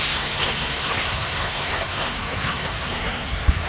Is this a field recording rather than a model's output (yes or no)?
no